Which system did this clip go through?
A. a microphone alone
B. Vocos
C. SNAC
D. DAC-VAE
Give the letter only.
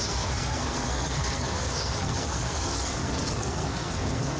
C